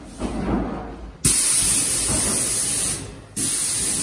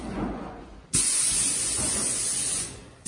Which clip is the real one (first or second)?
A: first